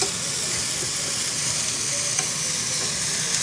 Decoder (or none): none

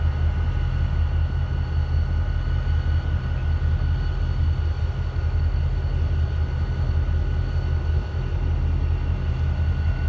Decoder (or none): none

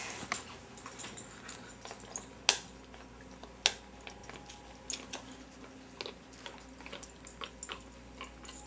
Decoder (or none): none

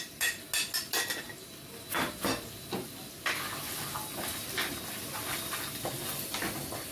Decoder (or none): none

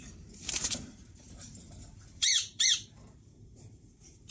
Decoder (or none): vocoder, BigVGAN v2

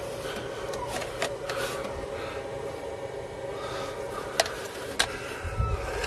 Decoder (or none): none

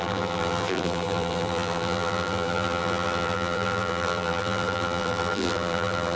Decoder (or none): vocoder, BigVGAN v2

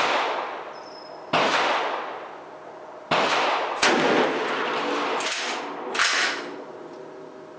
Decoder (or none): none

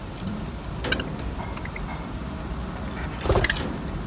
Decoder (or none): none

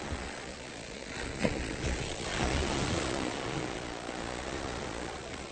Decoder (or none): vocoder, Vocos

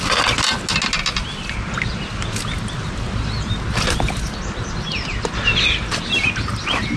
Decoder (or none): none